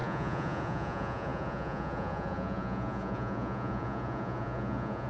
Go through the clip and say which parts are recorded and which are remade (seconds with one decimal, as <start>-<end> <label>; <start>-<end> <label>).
0.0-5.1 remade